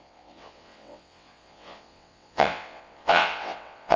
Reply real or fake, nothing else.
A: fake